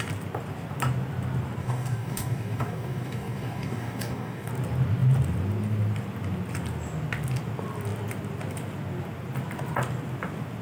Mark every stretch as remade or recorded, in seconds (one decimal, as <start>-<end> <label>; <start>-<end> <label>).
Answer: 0.0-1.6 recorded; 1.6-4.5 remade; 4.5-10.6 recorded